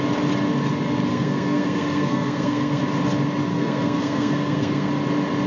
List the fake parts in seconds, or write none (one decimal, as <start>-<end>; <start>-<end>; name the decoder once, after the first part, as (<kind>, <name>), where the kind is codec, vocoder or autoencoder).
1.1-2.8 (codec, SNAC); 3.5-4.9